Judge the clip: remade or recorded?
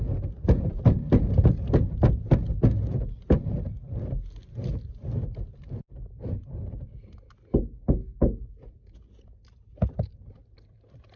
recorded